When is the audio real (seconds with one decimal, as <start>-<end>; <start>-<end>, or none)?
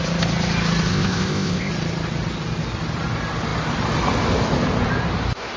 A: 0.0-0.9; 1.7-5.6